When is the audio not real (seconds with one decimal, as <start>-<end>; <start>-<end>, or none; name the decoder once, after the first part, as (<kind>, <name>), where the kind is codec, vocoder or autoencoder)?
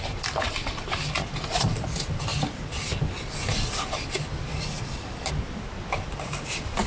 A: 4.5-5.3 (codec, DAC)